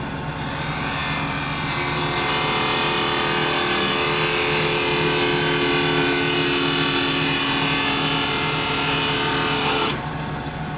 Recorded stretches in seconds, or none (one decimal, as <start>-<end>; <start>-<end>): 0.0-10.8